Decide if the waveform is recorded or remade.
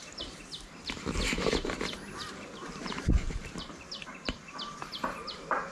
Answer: remade